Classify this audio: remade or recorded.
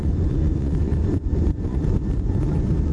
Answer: remade